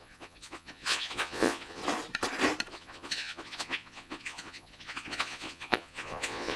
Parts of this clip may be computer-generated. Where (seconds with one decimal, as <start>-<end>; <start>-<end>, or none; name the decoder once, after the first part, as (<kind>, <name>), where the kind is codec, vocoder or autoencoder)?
0.0-1.8 (vocoder, Vocos); 2.7-6.6